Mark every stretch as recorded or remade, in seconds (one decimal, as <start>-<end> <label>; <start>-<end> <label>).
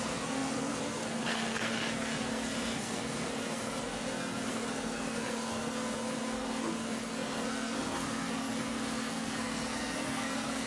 0.0-10.7 remade